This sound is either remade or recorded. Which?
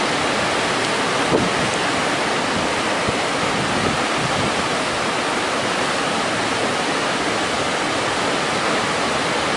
recorded